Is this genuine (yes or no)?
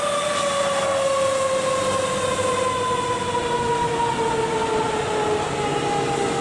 yes